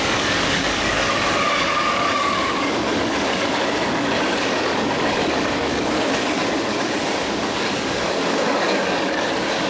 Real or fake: fake